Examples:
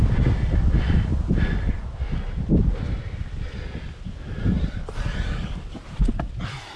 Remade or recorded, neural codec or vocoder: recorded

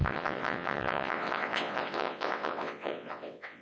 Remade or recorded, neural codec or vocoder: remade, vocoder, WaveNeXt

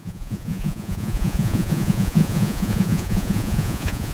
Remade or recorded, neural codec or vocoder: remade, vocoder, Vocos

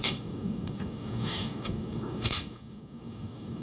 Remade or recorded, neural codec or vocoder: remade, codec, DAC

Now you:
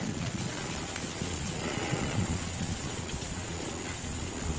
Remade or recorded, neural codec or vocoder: remade, vocoder, Vocos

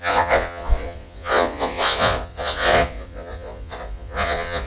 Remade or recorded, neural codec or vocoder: remade, vocoder, Vocos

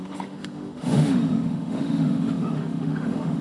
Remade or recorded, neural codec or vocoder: remade, autoencoder, DAC-VAE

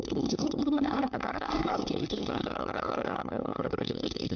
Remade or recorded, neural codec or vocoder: remade, codec, SNAC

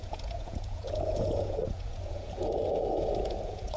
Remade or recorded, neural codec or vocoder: remade, vocoder, Vocos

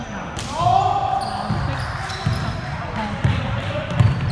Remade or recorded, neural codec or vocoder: recorded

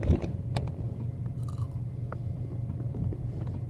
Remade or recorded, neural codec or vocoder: recorded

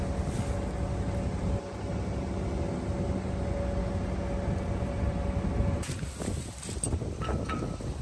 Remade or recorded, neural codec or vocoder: recorded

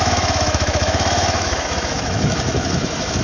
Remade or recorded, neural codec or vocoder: remade, autoencoder, DAC-VAE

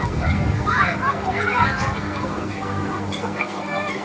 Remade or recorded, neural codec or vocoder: remade, codec, SNAC